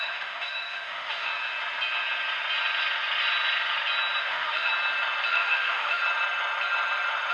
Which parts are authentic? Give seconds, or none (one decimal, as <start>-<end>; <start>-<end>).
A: 1.3-4.2; 4.7-5.3; 6.0-7.3